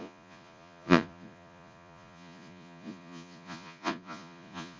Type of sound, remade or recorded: remade